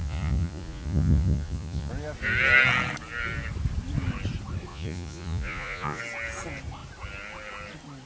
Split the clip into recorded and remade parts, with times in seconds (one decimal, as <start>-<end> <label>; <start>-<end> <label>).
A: 0.0-1.9 remade; 1.9-4.7 recorded; 4.7-6.0 remade; 6.0-8.1 recorded